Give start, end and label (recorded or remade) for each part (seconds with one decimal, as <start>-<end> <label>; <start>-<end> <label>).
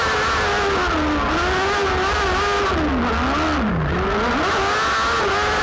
0.0-5.6 recorded